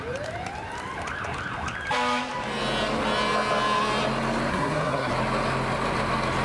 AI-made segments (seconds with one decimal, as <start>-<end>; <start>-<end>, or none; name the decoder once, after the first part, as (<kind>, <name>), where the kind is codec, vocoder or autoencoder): 4.5-5.1 (codec, SNAC)